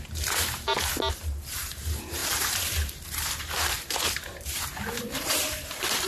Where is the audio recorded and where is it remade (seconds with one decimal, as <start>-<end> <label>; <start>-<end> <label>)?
0.0-0.7 remade; 0.7-1.8 recorded; 1.8-6.1 remade